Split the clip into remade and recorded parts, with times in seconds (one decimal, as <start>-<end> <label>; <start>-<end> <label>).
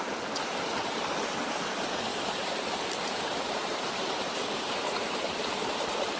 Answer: 0.0-2.1 recorded; 2.1-5.6 remade; 5.6-6.2 recorded